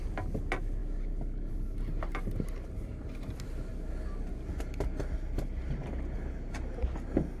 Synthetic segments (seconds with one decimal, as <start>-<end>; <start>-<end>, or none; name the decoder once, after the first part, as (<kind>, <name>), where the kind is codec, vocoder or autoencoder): none